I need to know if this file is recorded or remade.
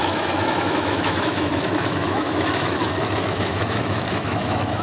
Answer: remade